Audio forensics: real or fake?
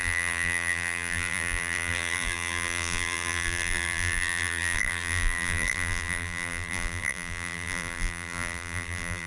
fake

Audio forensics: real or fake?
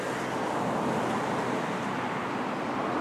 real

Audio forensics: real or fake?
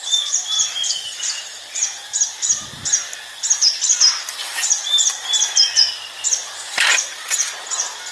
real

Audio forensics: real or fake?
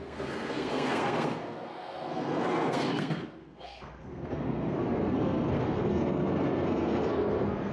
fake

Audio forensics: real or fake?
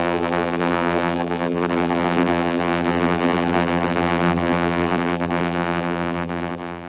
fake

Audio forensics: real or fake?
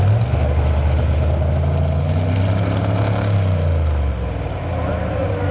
real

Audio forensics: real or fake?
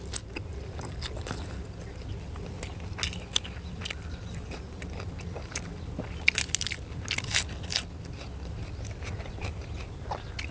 real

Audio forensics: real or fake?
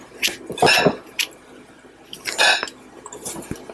real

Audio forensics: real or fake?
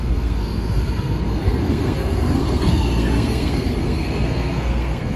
fake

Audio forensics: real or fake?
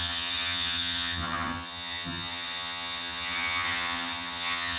fake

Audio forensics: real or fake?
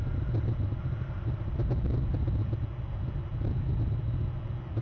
real